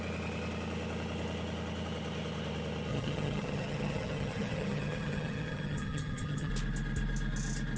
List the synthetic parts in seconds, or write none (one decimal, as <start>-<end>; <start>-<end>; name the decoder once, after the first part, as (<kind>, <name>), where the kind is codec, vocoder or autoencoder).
2.9-6.5 (vocoder, HiFi-GAN)